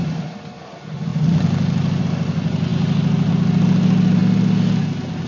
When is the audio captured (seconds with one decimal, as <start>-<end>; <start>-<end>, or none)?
0.0-5.3